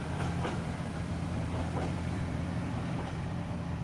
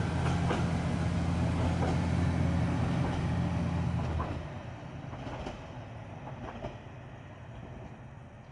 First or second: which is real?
second